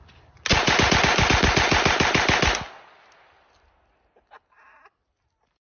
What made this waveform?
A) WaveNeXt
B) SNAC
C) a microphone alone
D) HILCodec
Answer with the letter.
C